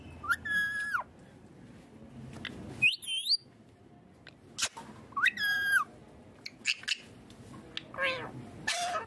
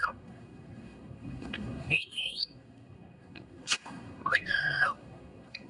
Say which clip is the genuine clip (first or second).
first